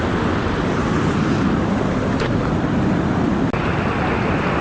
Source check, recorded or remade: recorded